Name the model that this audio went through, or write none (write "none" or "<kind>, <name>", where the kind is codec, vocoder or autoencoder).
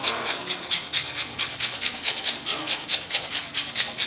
codec, SNAC